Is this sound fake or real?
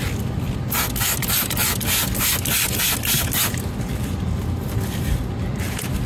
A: real